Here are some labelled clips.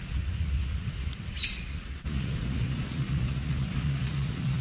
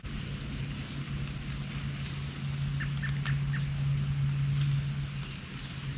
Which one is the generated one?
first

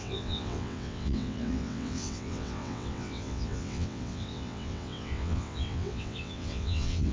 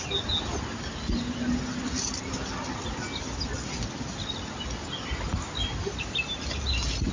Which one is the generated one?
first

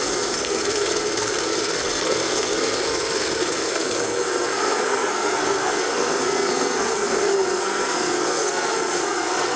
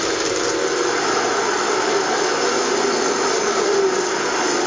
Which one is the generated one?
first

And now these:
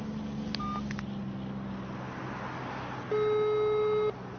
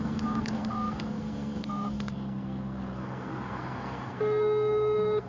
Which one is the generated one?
second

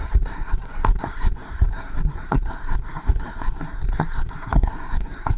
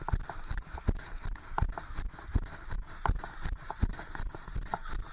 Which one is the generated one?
first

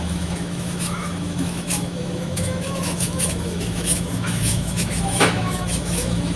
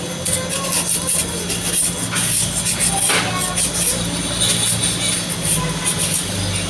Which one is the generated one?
first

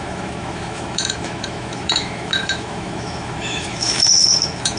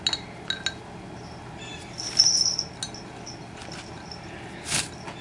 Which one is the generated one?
first